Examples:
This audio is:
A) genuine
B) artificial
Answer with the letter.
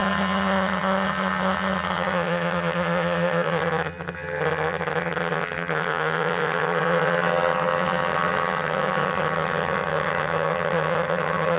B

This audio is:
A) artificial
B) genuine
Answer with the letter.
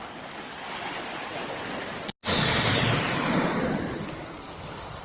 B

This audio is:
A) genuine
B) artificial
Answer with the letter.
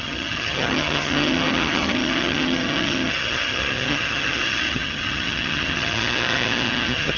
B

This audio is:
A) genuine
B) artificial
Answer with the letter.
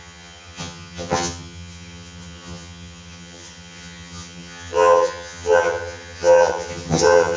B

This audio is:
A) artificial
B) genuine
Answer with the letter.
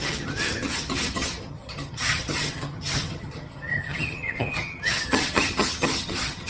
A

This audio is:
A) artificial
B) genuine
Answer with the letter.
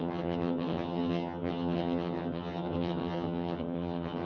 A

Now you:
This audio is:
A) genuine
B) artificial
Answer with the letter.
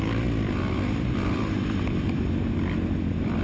A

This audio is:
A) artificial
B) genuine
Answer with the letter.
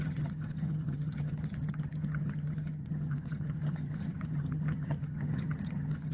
A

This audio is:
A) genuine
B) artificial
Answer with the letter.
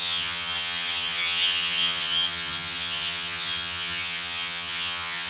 B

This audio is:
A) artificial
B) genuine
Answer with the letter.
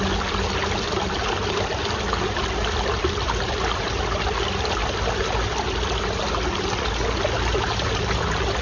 B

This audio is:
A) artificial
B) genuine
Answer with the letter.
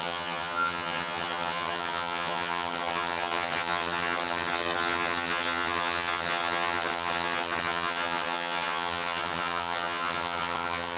A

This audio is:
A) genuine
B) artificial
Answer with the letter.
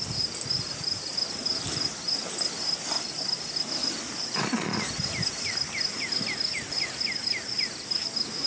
A